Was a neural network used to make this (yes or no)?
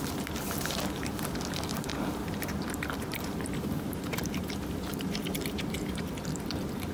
yes